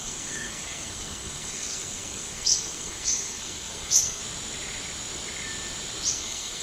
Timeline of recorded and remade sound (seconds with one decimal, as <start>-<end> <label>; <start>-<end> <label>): 0.0-4.2 remade; 4.2-6.1 recorded; 6.1-6.6 remade